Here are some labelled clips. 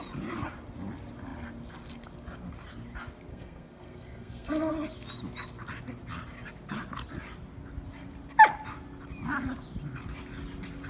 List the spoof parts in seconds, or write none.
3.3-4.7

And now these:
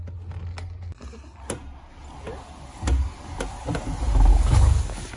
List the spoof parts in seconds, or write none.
4.3-5.2

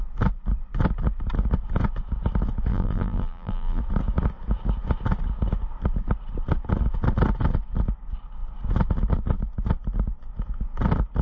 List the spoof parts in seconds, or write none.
2.7-3.8

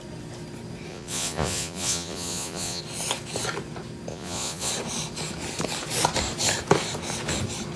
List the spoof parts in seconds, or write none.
0.9-2.8; 4.1-4.7